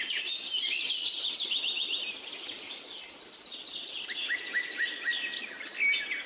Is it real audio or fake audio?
real